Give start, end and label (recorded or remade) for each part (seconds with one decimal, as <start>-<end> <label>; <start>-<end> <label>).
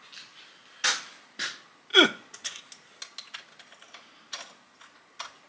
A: 0.0-1.9 recorded; 1.9-2.6 remade; 2.6-5.5 recorded